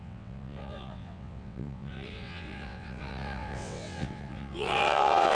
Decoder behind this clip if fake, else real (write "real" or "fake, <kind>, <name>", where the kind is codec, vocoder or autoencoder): fake, vocoder, WaveNeXt